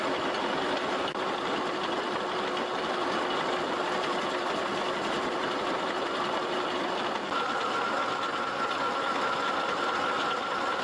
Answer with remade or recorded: recorded